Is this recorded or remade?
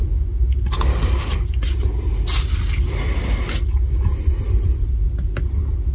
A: recorded